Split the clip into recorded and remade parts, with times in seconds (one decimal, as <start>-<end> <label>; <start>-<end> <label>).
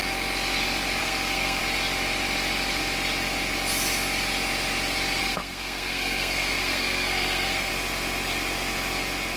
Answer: 0.0-1.0 recorded; 1.0-1.6 remade; 1.6-5.2 recorded; 5.2-7.7 remade; 7.7-9.4 recorded